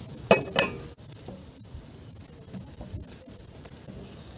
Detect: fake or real real